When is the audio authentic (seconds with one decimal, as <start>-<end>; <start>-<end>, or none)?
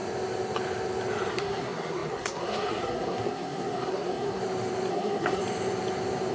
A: 0.0-1.3; 4.4-4.9; 5.4-6.3